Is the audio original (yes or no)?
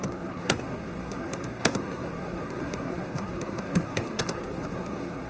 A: no